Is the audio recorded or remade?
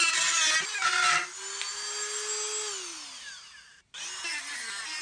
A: recorded